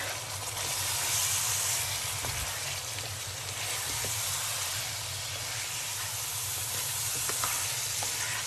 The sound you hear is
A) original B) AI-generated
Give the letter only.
A